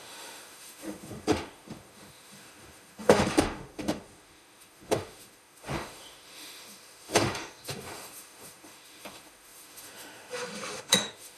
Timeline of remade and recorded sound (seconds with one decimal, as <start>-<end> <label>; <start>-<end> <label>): 0.0-11.4 remade

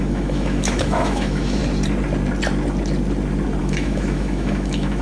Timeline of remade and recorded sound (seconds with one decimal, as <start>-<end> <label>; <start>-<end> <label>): 0.0-1.6 remade; 1.6-3.6 recorded; 3.6-5.0 remade

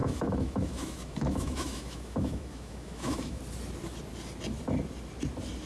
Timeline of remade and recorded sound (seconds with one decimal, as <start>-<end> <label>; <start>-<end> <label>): 0.0-3.4 remade; 3.4-5.7 recorded

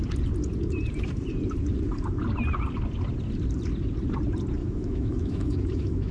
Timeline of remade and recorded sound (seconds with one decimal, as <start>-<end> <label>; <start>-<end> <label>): 0.0-4.6 recorded; 4.6-6.1 remade

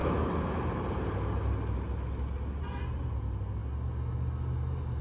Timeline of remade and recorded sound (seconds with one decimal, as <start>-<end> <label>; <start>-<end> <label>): 0.0-5.0 recorded

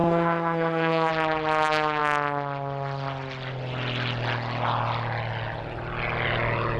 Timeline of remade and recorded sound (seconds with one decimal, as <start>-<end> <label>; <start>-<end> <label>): 0.0-1.1 remade; 1.1-6.8 recorded